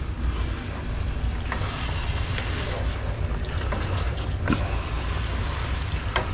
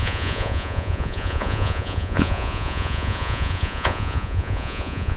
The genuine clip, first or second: first